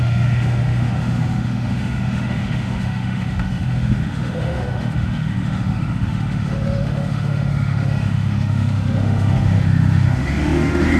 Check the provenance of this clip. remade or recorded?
remade